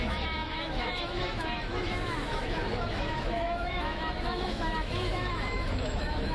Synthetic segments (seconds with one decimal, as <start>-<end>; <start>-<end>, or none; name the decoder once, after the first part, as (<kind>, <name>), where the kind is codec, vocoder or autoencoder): 0.0-6.3 (autoencoder, DAC-VAE)

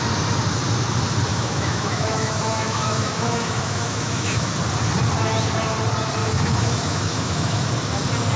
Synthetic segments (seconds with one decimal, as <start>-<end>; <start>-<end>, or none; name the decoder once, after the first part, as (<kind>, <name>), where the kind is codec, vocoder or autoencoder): 1.3-4.5 (autoencoder, DAC-VAE); 6.2-7.7

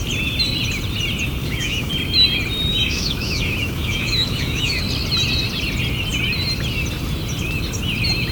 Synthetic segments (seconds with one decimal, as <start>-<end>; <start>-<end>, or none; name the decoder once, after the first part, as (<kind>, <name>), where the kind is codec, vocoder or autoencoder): 1.4-1.9 (autoencoder, DAC-VAE); 2.7-4.8

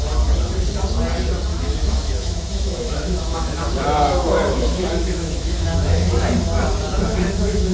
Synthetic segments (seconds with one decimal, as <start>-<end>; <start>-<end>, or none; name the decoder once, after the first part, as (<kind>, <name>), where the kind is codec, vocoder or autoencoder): 1.5-6.1 (autoencoder, DAC-VAE); 7.1-7.7

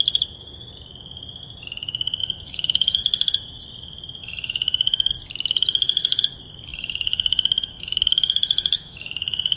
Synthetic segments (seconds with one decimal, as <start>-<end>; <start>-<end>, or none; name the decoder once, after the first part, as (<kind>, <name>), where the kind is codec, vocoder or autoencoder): 2.2-3.0 (autoencoder, DAC-VAE); 4.2-5.1; 6.7-9.6

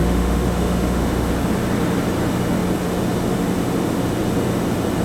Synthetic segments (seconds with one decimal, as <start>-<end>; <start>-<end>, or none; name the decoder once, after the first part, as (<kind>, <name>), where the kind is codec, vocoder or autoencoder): 0.0-1.3 (autoencoder, DAC-VAE)

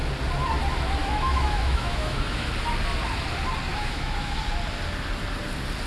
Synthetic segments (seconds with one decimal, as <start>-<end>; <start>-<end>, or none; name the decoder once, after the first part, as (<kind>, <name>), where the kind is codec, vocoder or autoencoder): 1.0-2.5 (autoencoder, DAC-VAE); 3.7-4.4

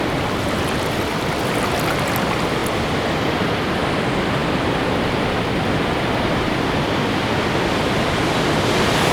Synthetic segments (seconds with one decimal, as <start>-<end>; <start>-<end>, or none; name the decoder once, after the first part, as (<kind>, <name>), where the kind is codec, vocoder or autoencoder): none